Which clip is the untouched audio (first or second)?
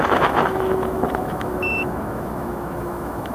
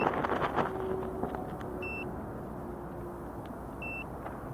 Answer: second